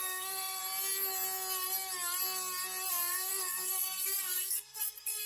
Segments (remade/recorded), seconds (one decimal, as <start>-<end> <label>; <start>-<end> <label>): 0.0-0.6 remade; 0.6-2.9 recorded; 2.9-5.3 remade